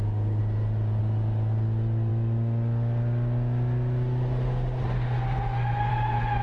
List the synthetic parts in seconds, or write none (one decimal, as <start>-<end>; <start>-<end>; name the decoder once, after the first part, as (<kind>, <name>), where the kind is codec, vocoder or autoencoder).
0.4-1.0 (vocoder, Vocos)